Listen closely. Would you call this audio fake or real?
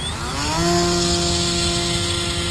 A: real